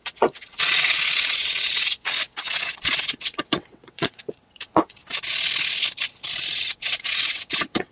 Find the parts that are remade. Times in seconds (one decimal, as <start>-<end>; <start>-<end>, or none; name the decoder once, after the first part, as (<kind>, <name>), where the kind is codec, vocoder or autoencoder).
0.0-5.0 (vocoder, WaveNeXt); 6.3-7.9